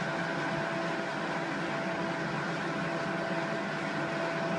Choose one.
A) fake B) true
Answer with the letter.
B